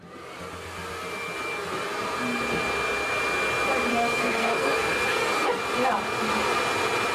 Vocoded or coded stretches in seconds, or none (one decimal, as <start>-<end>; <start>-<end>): 3.9-5.6